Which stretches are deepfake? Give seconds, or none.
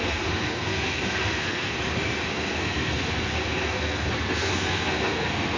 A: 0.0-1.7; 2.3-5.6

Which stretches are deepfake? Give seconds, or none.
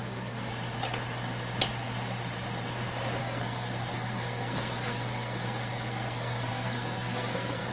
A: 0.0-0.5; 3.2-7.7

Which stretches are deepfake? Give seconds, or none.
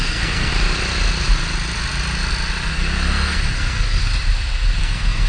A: 0.0-0.5; 2.7-4.0; 4.8-5.3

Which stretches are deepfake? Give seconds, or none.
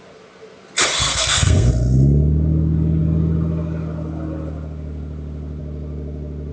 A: 1.0-1.7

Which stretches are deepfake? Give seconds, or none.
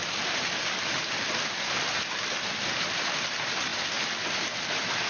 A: none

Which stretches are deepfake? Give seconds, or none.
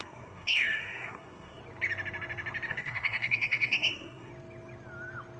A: 0.0-1.6; 2.7-4.3